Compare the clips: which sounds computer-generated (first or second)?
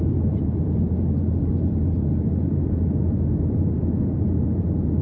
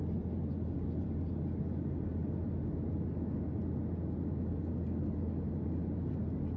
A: first